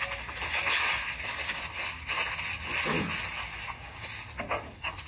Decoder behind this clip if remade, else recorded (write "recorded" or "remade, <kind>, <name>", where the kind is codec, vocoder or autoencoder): recorded